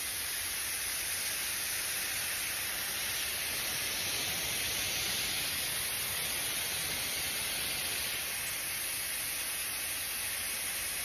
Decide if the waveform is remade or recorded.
recorded